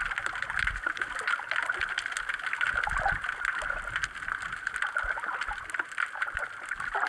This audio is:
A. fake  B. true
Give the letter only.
B